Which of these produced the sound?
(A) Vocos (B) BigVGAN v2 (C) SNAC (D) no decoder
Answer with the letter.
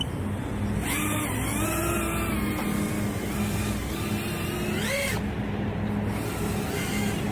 B